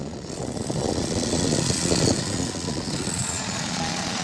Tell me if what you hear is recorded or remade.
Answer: remade